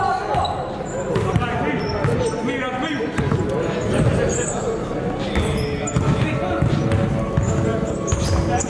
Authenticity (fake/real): real